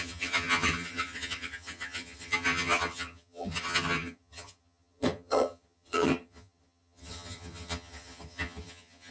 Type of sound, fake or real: fake